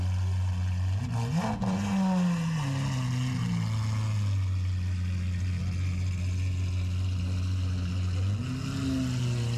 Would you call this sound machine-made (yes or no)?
no